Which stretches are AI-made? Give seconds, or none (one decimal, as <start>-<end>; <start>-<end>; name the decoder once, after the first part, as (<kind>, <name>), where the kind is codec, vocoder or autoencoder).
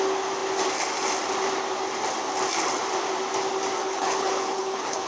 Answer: 3.8-5.1 (codec, HILCodec)